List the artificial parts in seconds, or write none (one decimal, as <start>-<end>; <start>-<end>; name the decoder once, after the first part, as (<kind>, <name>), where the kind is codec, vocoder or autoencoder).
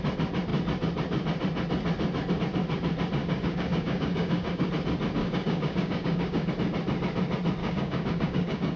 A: 3.2-4.7 (codec, DAC); 5.2-6.5; 7.6-8.8